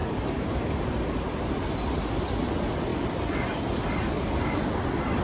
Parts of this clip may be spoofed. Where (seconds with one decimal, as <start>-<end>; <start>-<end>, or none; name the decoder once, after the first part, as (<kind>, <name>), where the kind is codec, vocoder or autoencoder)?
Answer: 0.0-1.4 (vocoder, BigVGAN v2)

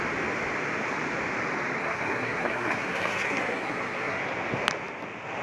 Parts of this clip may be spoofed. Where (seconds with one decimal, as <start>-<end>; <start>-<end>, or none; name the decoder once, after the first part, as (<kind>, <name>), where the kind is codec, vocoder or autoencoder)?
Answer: 1.8-4.2 (codec, SNAC)

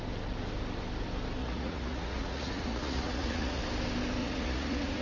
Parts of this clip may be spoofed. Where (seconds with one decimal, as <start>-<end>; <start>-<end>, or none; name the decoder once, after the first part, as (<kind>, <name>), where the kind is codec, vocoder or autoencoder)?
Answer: 1.4-3.6 (vocoder, Vocos); 4.2-5.0

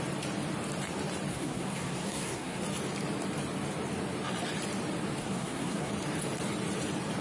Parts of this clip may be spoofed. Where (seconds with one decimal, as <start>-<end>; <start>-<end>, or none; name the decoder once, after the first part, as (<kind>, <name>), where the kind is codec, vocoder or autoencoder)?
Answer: 1.3-2.6 (codec, SNAC); 5.2-5.9

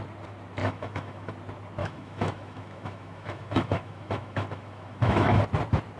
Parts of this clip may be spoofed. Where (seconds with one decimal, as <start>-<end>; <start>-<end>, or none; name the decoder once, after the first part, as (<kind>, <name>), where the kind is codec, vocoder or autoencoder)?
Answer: 0.6-1.3 (autoencoder, DAC-VAE); 1.8-5.4

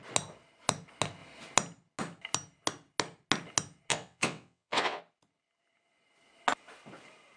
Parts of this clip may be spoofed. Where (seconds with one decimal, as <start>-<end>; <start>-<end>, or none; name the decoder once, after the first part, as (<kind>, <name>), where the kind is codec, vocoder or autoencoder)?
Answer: 3.9-5.0 (vocoder, WaveNeXt)

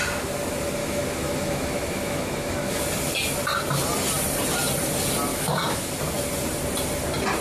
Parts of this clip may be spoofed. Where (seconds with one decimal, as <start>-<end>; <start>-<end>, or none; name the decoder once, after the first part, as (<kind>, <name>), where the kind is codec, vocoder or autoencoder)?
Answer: 0.8-2.8 (autoencoder, DAC-VAE); 5.3-5.9